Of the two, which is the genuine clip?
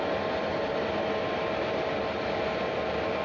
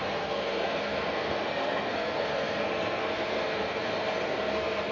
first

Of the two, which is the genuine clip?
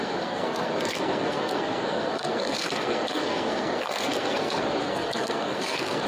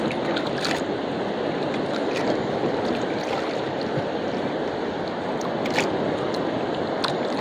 second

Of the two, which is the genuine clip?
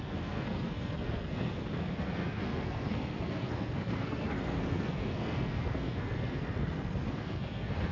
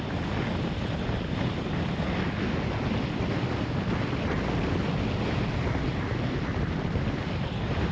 second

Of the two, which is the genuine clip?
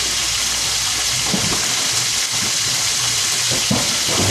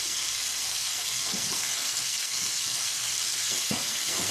first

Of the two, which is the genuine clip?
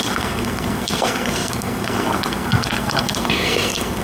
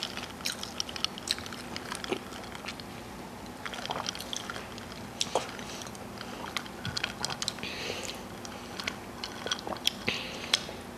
second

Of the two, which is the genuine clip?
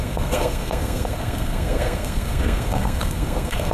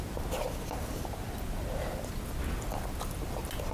second